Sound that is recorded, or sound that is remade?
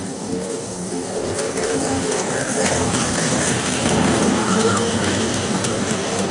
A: remade